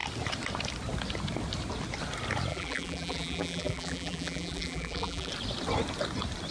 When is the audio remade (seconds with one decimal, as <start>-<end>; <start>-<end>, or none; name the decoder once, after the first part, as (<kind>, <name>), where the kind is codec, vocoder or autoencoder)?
2.5-5.3 (vocoder, BigVGAN v2)